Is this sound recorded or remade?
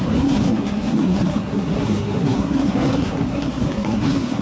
remade